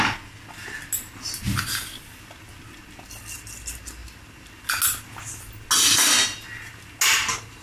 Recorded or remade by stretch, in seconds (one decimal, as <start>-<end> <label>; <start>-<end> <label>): 0.0-7.6 recorded